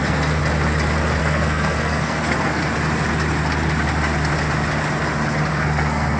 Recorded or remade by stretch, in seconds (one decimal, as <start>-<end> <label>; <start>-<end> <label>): 0.0-0.4 remade; 0.4-1.2 recorded; 1.2-2.6 remade; 2.6-5.5 recorded; 5.5-6.2 remade